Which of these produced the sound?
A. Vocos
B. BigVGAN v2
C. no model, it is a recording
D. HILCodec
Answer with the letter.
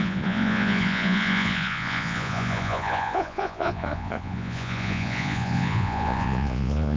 A